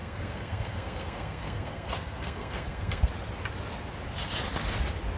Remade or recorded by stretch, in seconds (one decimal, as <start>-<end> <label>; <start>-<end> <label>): 0.0-3.1 remade; 3.1-5.2 recorded